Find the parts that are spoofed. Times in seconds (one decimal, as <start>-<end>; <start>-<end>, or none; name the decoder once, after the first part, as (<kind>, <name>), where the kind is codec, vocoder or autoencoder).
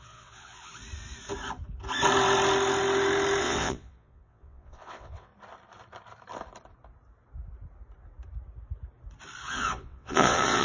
0.0-0.7 (vocoder, WaveNeXt); 3.4-5.3; 9.4-10.6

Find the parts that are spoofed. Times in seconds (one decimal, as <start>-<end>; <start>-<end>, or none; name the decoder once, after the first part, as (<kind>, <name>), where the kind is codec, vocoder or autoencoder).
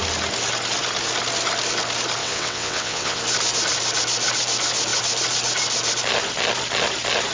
2.2-3.2 (vocoder, WaveNeXt)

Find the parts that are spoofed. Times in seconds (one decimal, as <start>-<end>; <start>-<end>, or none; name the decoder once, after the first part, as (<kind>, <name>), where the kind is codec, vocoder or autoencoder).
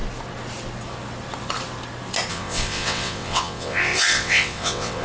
2.3-5.0 (vocoder, WaveNeXt)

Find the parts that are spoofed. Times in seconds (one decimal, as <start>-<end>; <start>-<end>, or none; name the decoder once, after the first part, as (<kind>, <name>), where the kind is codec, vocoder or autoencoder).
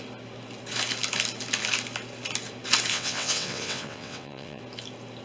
2.9-4.6 (vocoder, WaveNeXt)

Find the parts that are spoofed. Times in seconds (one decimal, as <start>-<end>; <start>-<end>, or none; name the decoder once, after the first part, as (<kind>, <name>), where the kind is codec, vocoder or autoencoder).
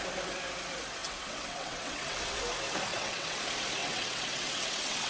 1.0-2.4 (vocoder, WaveNeXt); 2.9-3.4; 3.8-5.1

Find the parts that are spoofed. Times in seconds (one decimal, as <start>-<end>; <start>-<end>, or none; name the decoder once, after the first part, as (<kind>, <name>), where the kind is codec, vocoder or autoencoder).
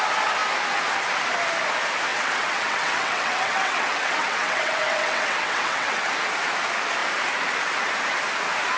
2.1-6.1 (vocoder, WaveNeXt)